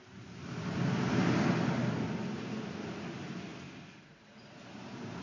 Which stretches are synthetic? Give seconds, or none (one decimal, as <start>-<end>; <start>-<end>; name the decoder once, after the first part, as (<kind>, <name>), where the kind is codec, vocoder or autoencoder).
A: none